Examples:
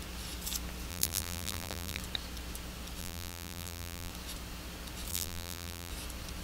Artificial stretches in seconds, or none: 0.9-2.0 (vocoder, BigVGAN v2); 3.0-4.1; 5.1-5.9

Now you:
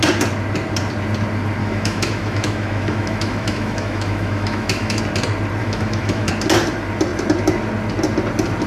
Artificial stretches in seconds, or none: 1.6-5.0 (autoencoder, DAC-VAE); 5.6-6.3

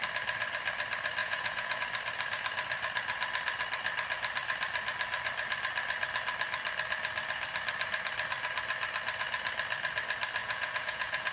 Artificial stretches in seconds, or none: 1.2-1.8 (vocoder, Vocos); 10.4-11.3

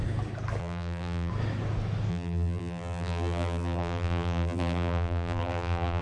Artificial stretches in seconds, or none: 0.6-1.3 (vocoder, BigVGAN v2); 2.1-6.0

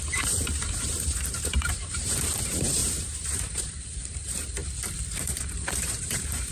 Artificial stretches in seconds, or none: 0.0-4.6 (vocoder, BigVGAN v2); 5.2-6.5